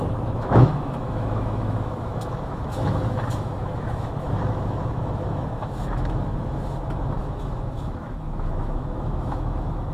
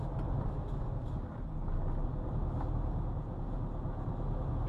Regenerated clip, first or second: first